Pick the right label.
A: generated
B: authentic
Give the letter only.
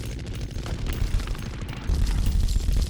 B